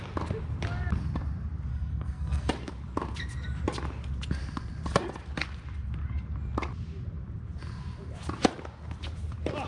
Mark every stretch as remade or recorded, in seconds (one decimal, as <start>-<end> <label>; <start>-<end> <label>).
0.0-1.7 recorded; 1.7-2.5 remade; 2.5-9.7 recorded